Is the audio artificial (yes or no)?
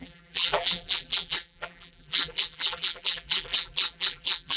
yes